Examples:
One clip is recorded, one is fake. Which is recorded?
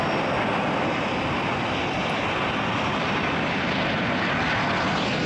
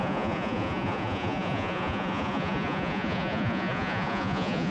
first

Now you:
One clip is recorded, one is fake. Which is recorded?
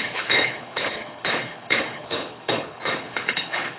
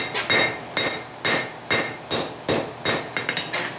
second